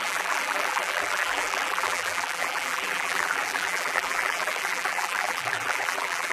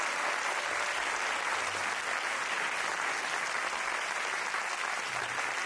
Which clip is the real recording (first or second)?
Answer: second